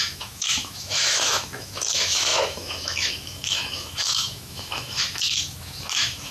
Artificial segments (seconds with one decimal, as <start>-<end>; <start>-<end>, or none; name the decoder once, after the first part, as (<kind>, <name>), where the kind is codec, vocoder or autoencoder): 0.0-6.3 (autoencoder, DAC-VAE)